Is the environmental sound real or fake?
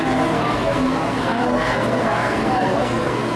fake